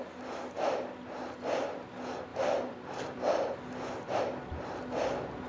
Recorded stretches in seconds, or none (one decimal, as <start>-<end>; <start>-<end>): 0.0-2.3; 4.2-5.5